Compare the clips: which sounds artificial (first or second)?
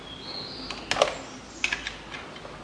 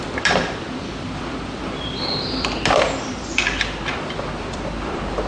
second